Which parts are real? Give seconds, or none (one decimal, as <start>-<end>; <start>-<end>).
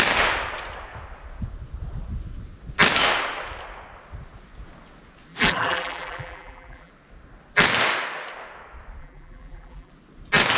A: 0.0-5.3; 6.9-9.0; 9.9-10.6